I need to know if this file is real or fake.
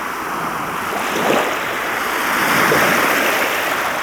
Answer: real